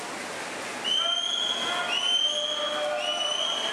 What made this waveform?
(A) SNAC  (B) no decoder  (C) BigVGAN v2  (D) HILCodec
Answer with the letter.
B